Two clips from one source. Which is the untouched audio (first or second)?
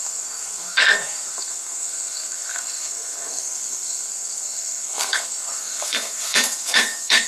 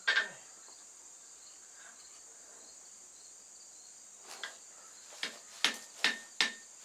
second